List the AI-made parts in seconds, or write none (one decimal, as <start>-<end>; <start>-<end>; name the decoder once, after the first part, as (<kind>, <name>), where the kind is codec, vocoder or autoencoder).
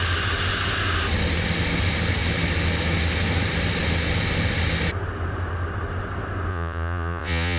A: 6.5-7.6 (vocoder, Vocos)